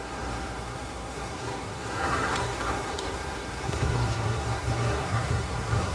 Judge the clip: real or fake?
fake